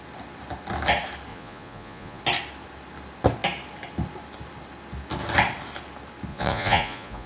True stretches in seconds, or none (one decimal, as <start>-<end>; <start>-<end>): 0.0-1.3; 2.2-6.3